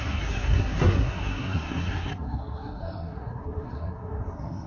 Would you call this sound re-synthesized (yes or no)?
yes